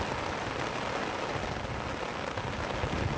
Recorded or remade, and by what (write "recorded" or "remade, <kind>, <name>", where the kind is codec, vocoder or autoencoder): recorded